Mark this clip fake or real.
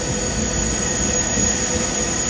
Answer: real